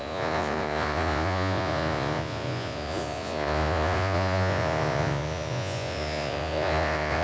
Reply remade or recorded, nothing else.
remade